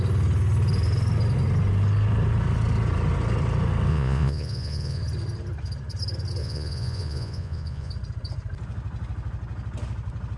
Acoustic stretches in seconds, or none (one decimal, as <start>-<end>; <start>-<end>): 0.0-3.9; 5.0-6.4; 7.9-10.4